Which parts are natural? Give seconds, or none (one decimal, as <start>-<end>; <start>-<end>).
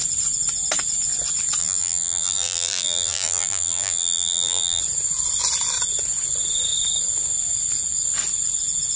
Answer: 0.0-1.6; 4.8-9.0